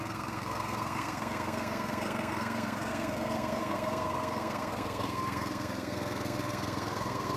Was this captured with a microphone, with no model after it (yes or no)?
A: no